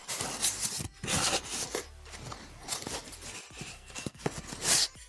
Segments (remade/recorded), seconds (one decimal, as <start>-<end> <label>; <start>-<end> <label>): 0.0-3.7 recorded; 3.7-4.2 remade; 4.2-5.1 recorded